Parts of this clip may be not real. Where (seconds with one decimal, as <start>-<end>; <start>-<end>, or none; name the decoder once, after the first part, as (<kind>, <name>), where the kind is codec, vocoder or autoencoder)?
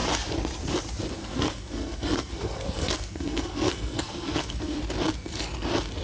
1.2-4.8 (codec, SNAC)